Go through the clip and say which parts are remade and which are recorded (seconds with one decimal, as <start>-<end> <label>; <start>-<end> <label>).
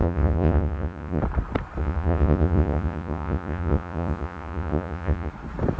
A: 0.0-1.2 remade; 1.2-1.8 recorded; 1.8-5.3 remade; 5.3-5.8 recorded